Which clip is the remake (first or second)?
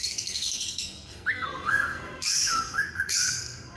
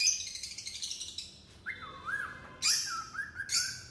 first